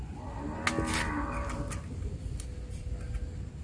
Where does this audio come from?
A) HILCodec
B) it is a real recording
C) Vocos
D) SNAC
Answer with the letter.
B